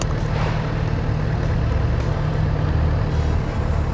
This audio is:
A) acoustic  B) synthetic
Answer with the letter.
A